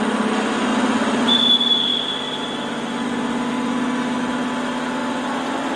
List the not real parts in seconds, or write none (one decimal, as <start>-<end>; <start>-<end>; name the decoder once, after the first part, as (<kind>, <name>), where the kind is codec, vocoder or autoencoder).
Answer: none